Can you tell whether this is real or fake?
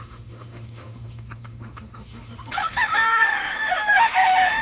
fake